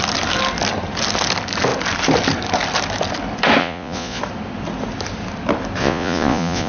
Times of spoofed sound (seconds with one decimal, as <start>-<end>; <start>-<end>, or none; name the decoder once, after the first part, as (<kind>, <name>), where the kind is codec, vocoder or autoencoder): 3.6-4.2 (vocoder, Vocos); 5.8-6.7